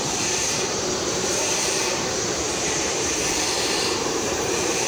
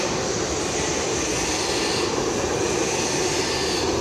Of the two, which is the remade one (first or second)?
first